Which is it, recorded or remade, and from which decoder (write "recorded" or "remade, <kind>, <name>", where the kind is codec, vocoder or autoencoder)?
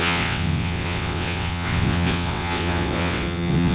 remade, vocoder, WaveNeXt